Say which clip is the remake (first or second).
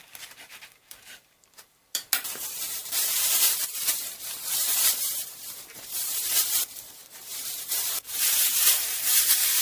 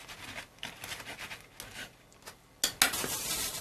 first